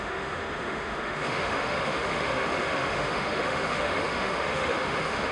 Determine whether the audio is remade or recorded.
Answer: remade